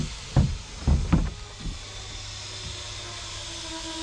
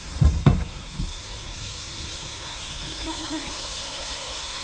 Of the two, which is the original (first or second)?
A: first